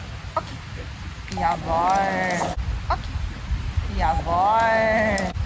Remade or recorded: recorded